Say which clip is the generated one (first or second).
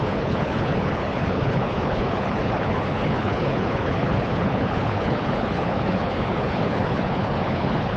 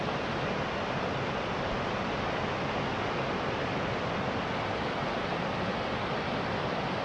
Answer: first